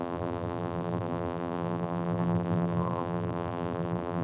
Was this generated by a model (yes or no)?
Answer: yes